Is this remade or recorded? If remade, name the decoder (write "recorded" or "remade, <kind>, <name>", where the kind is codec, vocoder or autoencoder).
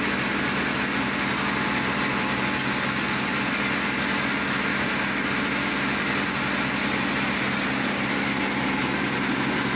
recorded